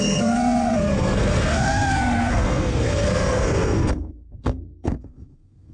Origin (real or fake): fake